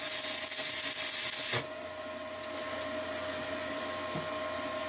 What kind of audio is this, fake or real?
real